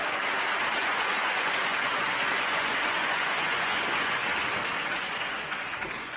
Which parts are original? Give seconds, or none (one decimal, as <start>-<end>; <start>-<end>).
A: 0.0-0.8; 4.2-4.7